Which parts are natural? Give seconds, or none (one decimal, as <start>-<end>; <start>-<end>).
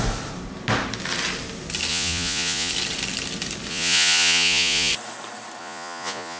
0.0-1.9; 2.7-3.7; 4.9-5.6